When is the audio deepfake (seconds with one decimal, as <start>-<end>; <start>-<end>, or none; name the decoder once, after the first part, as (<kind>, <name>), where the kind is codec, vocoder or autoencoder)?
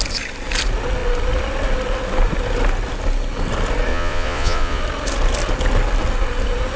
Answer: 3.9-4.8 (vocoder, Vocos)